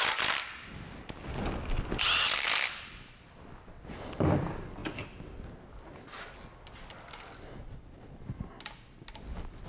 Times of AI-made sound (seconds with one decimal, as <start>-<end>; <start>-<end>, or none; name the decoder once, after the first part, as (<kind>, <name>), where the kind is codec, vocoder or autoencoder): none